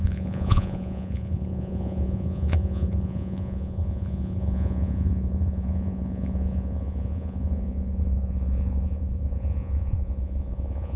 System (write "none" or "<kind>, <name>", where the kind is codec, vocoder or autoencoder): vocoder, Vocos